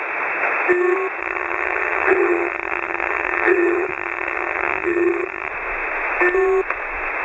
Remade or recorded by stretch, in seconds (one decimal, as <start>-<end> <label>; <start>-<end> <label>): 0.0-1.2 recorded; 1.2-5.5 remade; 5.5-7.2 recorded